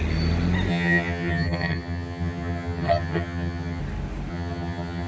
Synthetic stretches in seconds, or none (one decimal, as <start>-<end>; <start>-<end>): 0.7-3.8; 4.3-5.1